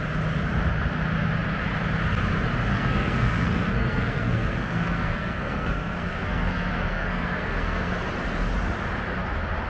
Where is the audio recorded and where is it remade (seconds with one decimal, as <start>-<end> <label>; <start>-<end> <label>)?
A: 0.0-2.7 recorded; 2.7-7.9 remade; 7.9-9.7 recorded

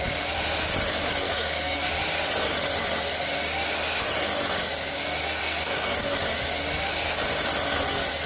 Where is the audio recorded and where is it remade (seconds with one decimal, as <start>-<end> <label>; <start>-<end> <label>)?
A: 0.0-1.1 recorded; 1.1-1.9 remade; 1.9-5.4 recorded; 5.4-6.2 remade; 6.2-8.3 recorded

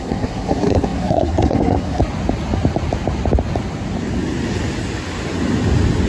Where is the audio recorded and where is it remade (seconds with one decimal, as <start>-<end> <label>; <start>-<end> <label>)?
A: 0.0-2.0 remade; 2.0-6.1 recorded

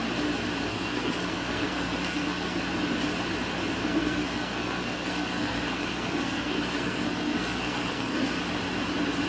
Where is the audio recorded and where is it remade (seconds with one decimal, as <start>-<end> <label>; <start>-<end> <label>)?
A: 0.0-0.7 recorded; 0.7-2.6 remade; 2.6-3.8 recorded; 3.8-8.4 remade; 8.4-9.3 recorded

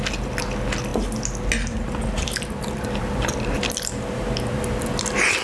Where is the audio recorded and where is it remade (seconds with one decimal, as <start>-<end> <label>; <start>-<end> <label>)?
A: 0.0-5.4 recorded

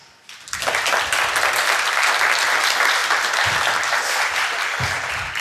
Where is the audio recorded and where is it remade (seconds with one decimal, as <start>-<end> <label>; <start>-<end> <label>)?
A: 0.0-5.4 recorded

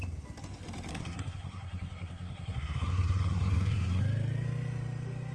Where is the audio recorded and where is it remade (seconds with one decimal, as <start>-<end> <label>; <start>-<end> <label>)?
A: 0.0-0.9 recorded; 0.9-4.0 remade; 4.0-5.3 recorded